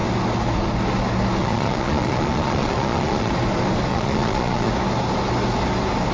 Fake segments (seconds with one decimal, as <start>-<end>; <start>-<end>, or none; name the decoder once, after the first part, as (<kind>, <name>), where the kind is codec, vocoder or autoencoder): 1.4-3.3 (vocoder, Vocos); 3.9-4.7